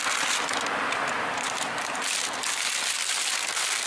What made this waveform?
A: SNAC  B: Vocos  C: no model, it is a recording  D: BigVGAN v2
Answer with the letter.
C